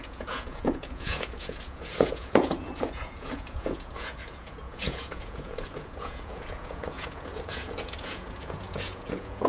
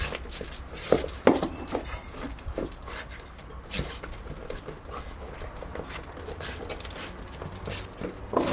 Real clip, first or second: second